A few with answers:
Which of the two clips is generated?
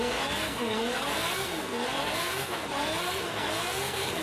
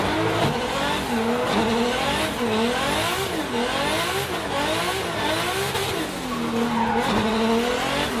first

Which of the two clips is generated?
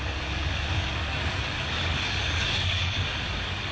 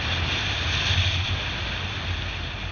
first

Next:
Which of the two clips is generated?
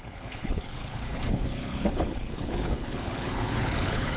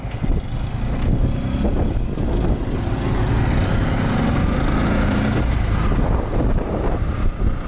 first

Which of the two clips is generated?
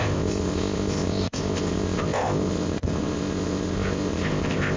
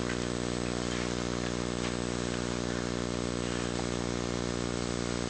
first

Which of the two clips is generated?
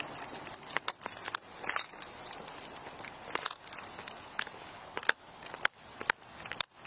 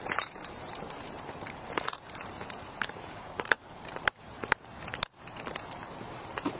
second